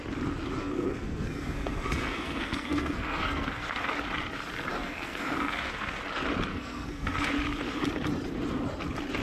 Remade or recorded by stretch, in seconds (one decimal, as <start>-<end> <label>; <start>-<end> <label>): 0.0-0.6 recorded; 0.6-3.9 remade; 3.9-4.7 recorded; 4.7-6.0 remade; 6.0-6.5 recorded; 6.5-7.3 remade; 7.3-9.2 recorded